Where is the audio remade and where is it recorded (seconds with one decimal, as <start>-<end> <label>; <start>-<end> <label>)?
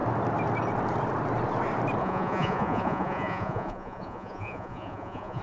0.0-2.0 recorded; 2.0-5.4 remade